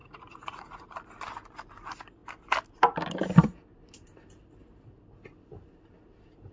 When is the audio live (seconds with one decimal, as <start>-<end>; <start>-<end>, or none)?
0.9-6.5